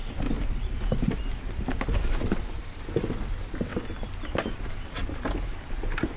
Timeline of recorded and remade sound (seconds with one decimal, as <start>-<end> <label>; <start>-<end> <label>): 0.0-6.2 recorded